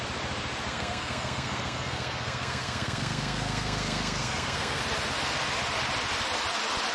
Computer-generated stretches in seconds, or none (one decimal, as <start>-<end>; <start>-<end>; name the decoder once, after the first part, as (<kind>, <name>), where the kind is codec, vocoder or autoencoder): 0.7-4.8 (codec, SNAC)